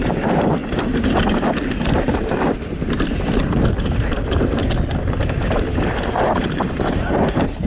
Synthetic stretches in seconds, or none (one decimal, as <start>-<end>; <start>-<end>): 0.0-0.6; 1.9-4.6; 6.9-7.7